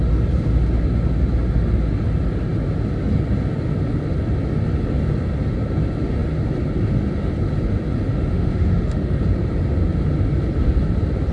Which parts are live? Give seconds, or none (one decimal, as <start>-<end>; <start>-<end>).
0.0-8.1; 9.2-11.3